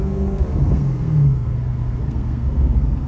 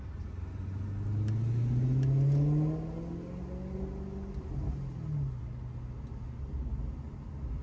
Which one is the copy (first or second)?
first